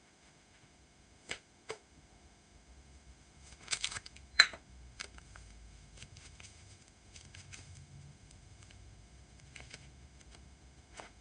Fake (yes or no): yes